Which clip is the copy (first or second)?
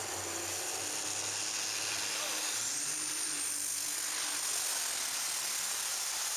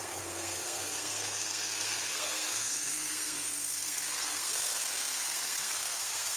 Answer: second